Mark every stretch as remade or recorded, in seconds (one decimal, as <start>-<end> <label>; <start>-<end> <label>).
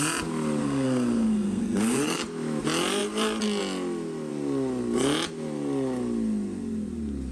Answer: 0.0-0.6 recorded; 0.6-2.2 remade; 2.2-7.3 recorded